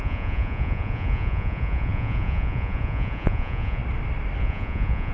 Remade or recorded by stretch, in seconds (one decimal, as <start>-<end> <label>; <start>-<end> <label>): 0.0-3.8 remade; 3.8-4.4 recorded; 4.4-5.1 remade